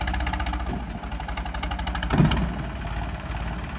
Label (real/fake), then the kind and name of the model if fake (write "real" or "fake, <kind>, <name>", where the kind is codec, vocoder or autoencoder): real